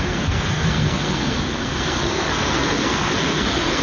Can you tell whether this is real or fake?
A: fake